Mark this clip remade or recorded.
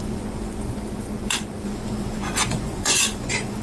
remade